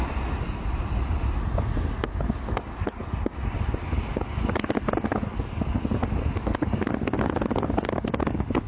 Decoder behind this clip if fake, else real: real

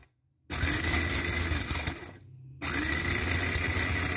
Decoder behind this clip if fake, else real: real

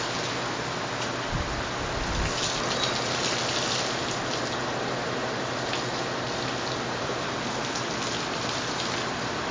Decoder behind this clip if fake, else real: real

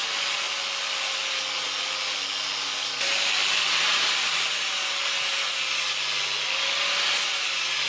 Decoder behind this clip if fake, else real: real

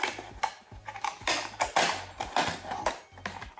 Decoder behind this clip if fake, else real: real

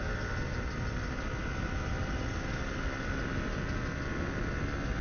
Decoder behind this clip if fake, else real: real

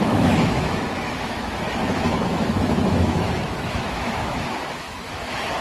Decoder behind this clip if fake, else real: fake, autoencoder, DAC-VAE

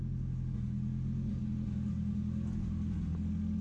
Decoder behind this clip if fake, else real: real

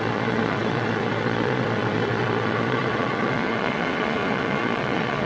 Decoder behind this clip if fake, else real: fake, vocoder, Vocos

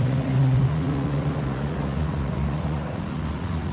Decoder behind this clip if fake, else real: fake, vocoder, Vocos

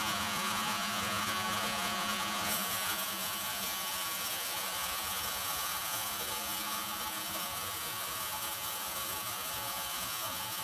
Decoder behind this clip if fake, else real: fake, vocoder, Vocos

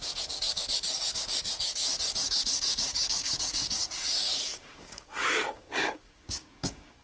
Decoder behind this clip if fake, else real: fake, codec, DAC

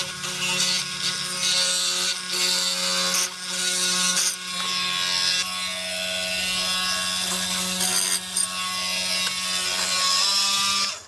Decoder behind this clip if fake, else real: real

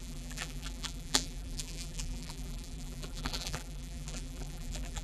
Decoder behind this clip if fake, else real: fake, vocoder, BigVGAN v2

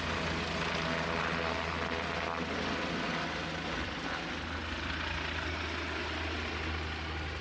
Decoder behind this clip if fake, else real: real